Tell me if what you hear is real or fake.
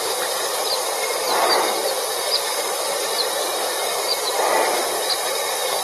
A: fake